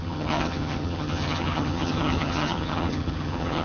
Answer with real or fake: fake